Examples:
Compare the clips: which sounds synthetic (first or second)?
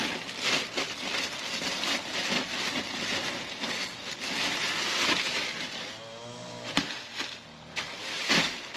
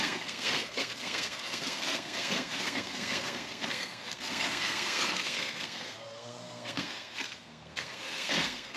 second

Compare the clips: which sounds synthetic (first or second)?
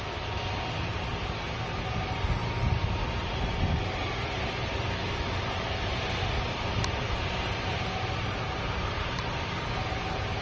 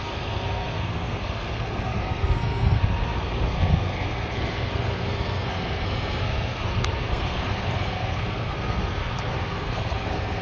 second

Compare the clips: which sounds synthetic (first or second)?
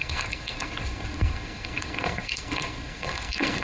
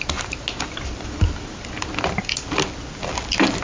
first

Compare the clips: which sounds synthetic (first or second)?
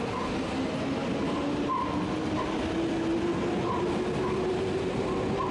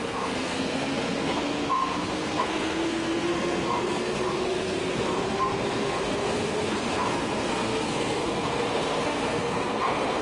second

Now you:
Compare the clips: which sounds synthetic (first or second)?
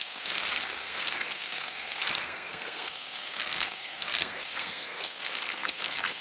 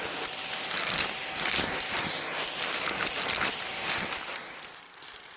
first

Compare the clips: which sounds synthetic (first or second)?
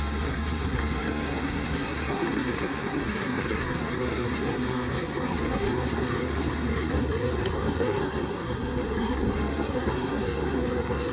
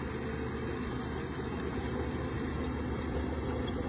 first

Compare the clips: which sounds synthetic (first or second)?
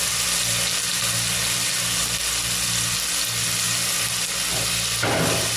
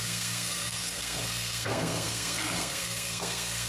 second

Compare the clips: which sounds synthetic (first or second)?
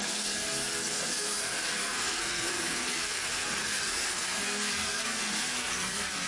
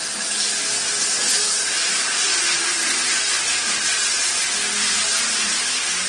first